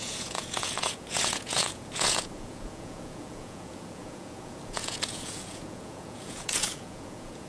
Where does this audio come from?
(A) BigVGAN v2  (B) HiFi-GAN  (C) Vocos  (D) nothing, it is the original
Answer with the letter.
C